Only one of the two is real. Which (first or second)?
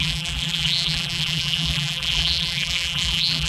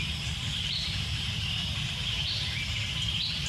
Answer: second